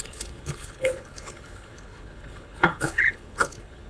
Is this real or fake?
fake